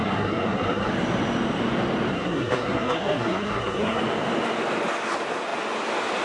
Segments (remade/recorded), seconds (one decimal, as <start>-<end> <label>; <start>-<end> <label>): 0.0-0.9 remade; 0.9-2.1 recorded; 2.1-4.0 remade; 4.0-6.2 recorded